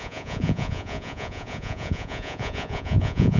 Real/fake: fake